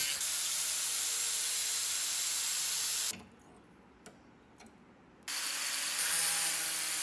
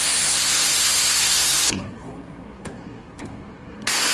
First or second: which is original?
first